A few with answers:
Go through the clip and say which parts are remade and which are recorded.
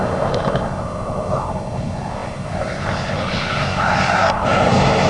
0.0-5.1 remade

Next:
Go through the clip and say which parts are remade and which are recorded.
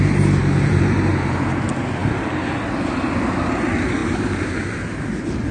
0.0-0.4 recorded; 0.4-1.1 remade; 1.1-4.0 recorded; 4.0-5.1 remade; 5.1-5.5 recorded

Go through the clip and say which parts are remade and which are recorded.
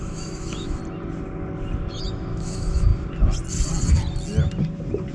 0.0-0.8 remade; 0.8-1.9 recorded; 1.9-2.9 remade; 2.9-5.1 recorded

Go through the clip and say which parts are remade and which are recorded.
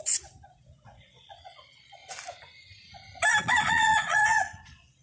0.0-2.0 remade; 2.0-3.4 recorded; 3.4-5.0 remade